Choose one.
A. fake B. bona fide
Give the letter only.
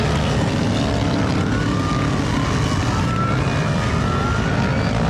B